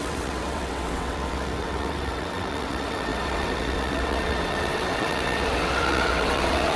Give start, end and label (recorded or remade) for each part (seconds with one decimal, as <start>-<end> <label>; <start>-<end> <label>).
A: 0.0-6.8 remade